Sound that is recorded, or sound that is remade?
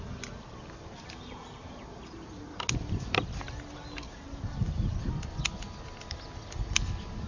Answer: recorded